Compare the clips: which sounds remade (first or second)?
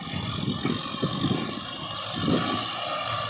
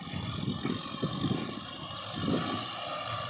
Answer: second